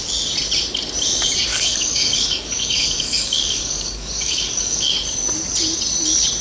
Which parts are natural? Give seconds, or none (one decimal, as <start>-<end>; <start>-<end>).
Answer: 0.0-1.5; 4.9-6.4